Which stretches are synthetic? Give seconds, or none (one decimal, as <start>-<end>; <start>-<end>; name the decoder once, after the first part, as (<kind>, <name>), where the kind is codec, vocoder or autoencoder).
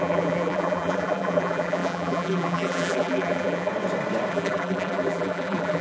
0.0-3.7 (vocoder, BigVGAN v2); 4.3-5.8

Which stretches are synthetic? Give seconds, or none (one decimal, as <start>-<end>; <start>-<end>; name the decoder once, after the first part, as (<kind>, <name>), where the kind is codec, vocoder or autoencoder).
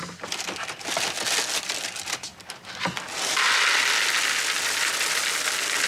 none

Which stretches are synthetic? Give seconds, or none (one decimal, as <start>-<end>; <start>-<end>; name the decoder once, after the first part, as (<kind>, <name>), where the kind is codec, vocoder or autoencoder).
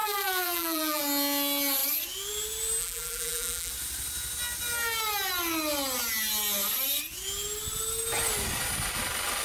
0.0-1.0 (vocoder, BigVGAN v2); 2.8-3.7